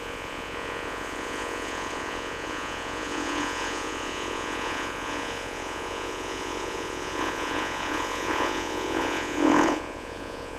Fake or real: fake